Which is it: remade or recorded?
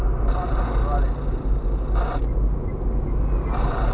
recorded